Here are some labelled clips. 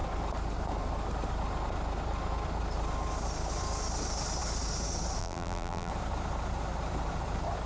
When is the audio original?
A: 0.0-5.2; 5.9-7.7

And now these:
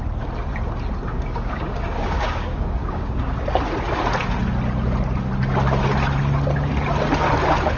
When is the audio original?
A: 0.0-1.1; 3.3-7.8

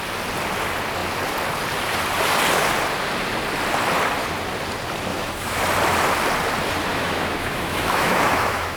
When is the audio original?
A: 0.0-5.1; 5.6-6.9